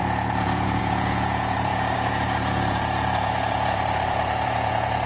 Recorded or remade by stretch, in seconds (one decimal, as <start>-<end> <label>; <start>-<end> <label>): 0.0-5.1 remade

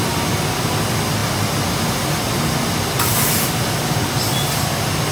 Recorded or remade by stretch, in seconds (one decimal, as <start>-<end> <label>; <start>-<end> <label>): 0.0-5.1 recorded

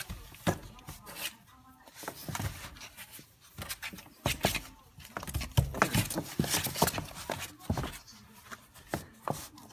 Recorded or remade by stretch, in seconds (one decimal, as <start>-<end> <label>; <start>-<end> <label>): 0.0-9.7 recorded

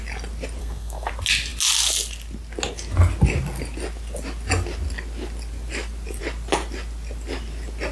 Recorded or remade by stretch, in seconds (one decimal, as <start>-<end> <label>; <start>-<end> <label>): 0.0-0.6 recorded; 0.6-1.1 remade; 1.1-7.9 recorded